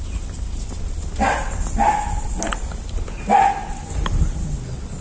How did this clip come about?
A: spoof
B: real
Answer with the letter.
B